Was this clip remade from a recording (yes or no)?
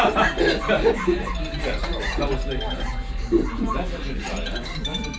no